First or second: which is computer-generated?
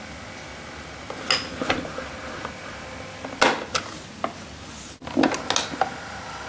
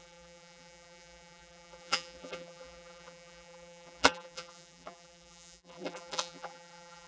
second